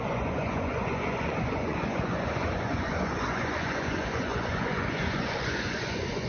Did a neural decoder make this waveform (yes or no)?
yes